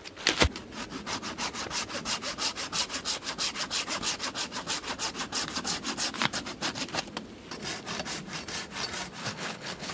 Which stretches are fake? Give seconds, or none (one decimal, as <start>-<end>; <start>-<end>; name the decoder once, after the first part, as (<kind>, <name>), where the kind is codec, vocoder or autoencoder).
9.2-9.9 (codec, HILCodec)